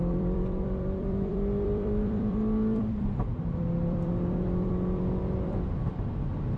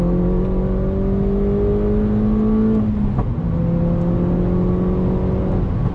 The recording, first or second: second